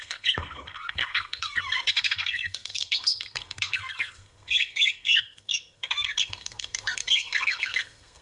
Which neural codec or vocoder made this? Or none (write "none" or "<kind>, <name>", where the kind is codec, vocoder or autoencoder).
codec, SNAC